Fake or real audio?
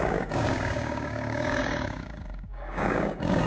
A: fake